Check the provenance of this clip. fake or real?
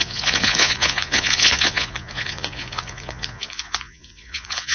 fake